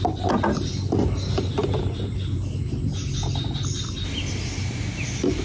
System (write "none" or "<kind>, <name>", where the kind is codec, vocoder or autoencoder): none